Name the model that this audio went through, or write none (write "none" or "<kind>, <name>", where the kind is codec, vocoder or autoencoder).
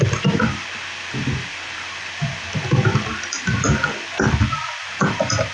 none